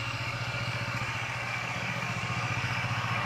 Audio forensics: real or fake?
fake